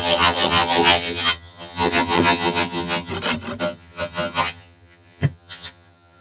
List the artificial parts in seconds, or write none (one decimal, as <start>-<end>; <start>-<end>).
0.0-3.1; 3.6-6.2